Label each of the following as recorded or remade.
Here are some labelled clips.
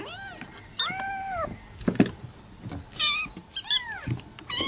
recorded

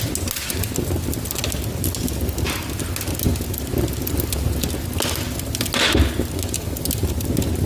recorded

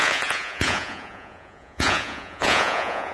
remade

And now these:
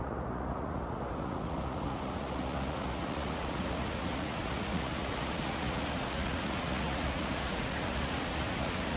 remade